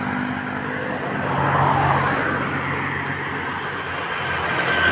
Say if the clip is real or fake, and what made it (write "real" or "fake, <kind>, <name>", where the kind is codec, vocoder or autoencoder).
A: real